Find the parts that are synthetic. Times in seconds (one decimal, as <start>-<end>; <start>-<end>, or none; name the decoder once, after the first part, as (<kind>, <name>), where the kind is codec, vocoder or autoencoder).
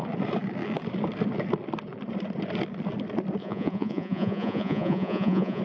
3.4-5.6 (vocoder, Vocos)